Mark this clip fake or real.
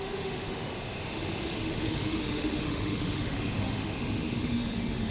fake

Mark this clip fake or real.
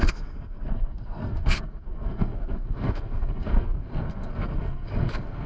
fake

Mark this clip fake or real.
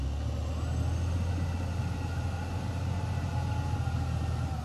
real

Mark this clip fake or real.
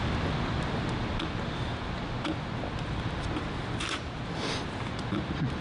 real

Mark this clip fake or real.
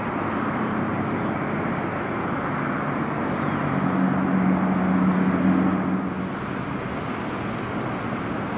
real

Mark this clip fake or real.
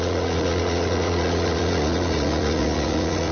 fake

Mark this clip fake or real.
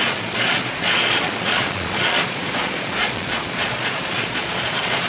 fake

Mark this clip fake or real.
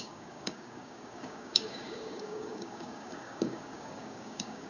fake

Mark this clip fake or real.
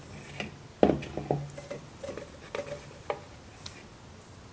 real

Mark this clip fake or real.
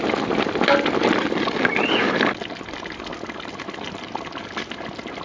real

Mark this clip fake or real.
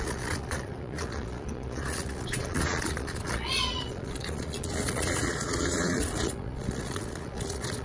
fake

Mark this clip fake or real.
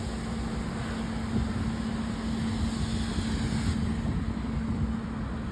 real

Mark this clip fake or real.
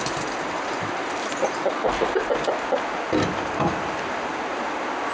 real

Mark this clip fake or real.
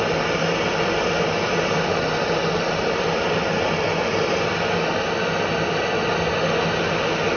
real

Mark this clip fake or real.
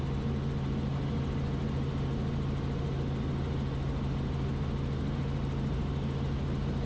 real